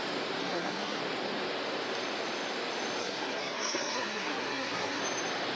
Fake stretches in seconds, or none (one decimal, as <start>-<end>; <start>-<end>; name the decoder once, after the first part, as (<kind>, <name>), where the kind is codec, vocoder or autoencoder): 0.4-1.0 (codec, SNAC); 3.0-5.0